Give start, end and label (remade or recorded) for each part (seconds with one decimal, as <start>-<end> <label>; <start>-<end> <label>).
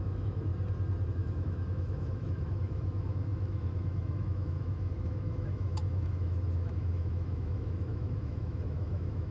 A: 0.0-0.5 remade; 0.5-1.1 recorded; 1.1-9.3 remade